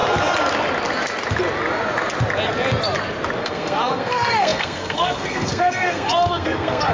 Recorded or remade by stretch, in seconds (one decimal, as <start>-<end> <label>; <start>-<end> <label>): 0.0-3.4 recorded; 3.4-6.9 remade